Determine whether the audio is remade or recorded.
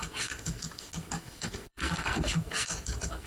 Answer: remade